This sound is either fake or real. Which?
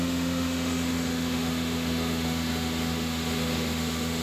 fake